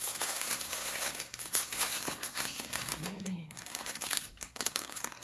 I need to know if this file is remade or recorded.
remade